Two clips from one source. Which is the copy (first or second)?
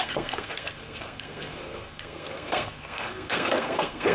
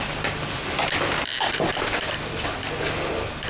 first